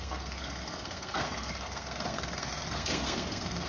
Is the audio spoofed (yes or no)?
yes